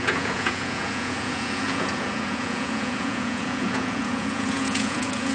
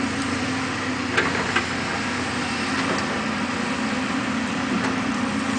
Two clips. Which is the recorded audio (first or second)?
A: second